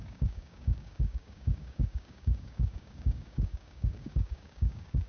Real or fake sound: fake